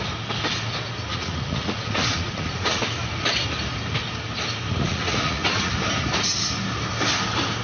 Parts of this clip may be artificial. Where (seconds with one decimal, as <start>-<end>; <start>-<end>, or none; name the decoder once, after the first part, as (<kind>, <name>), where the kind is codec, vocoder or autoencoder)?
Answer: 1.1-2.8 (vocoder, Vocos); 4.7-5.7